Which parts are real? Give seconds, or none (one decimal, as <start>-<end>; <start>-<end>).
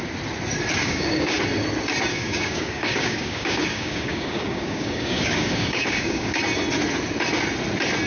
0.0-0.8; 1.4-2.1; 6.4-8.1